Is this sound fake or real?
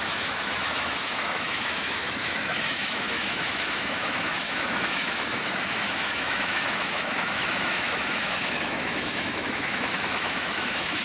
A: fake